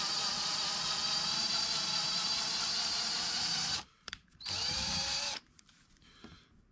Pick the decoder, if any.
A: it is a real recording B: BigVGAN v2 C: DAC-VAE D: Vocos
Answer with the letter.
B